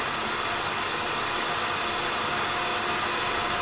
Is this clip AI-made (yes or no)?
no